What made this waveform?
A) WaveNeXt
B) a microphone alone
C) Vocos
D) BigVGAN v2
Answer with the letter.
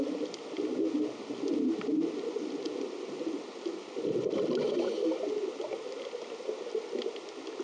B